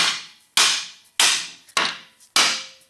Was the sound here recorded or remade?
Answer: recorded